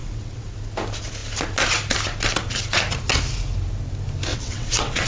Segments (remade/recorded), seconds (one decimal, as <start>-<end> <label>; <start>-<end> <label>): 0.0-0.5 remade; 0.5-4.3 recorded; 4.3-5.1 remade